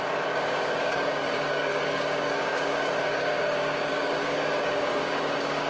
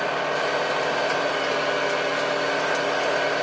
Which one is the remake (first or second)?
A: first